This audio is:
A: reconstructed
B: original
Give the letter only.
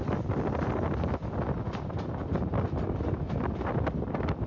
B